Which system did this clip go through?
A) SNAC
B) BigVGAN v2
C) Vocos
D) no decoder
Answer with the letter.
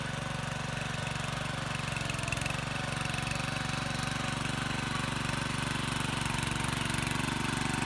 D